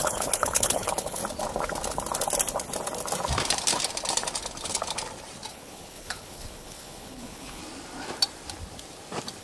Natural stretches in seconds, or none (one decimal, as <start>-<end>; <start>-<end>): 1.2-5.5; 7.6-9.4